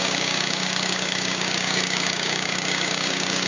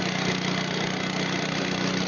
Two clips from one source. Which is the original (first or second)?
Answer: second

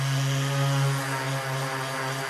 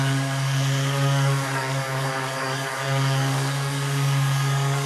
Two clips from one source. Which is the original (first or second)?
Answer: first